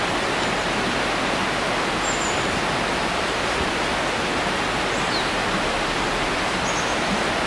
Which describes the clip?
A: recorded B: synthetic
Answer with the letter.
A